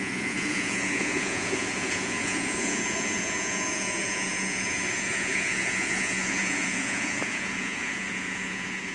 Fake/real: fake